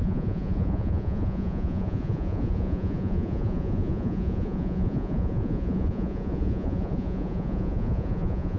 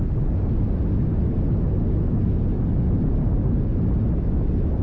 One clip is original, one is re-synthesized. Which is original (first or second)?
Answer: second